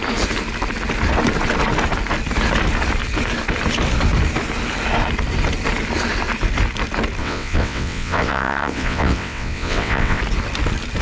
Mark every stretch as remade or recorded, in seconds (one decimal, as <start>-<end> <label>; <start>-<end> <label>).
0.0-7.2 recorded; 7.2-10.2 remade; 10.2-11.0 recorded